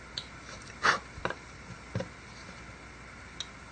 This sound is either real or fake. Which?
real